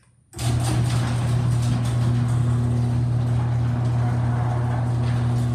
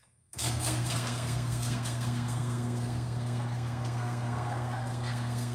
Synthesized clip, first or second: second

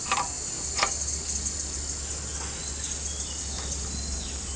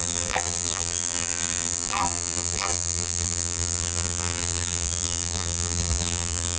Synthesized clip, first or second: second